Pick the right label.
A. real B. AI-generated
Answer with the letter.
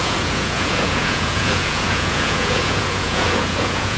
B